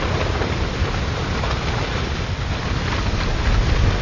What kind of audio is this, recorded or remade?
recorded